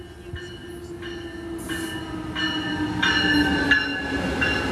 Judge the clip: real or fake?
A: real